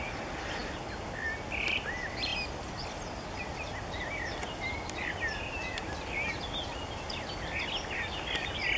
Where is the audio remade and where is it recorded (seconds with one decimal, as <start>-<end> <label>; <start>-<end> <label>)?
0.0-8.8 recorded